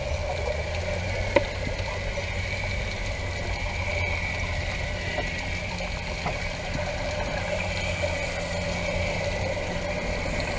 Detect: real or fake real